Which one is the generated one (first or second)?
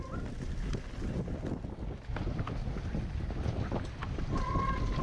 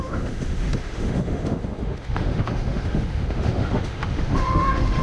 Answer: second